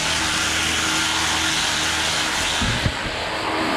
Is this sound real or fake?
real